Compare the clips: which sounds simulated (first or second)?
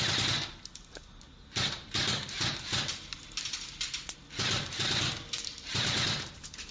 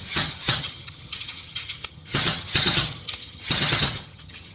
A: second